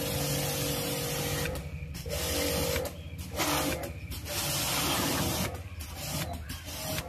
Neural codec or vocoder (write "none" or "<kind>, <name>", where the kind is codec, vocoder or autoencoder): none